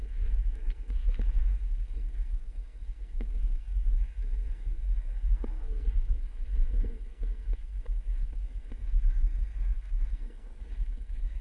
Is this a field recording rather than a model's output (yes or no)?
no